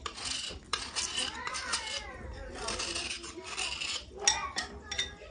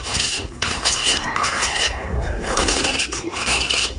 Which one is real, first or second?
first